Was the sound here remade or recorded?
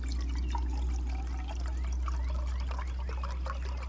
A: recorded